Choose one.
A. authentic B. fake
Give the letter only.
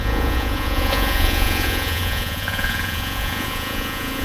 B